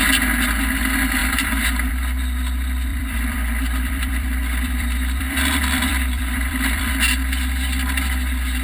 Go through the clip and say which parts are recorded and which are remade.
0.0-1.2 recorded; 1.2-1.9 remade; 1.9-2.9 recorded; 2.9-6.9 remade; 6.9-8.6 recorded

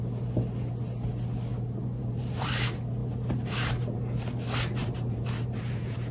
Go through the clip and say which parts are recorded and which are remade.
0.0-1.8 recorded; 1.8-2.5 remade; 2.5-3.0 recorded; 3.0-3.7 remade; 3.7-4.8 recorded; 4.8-6.1 remade